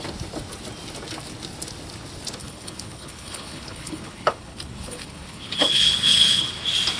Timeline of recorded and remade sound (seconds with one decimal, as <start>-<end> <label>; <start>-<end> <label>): 0.0-2.4 recorded; 2.4-6.6 remade; 6.6-7.0 recorded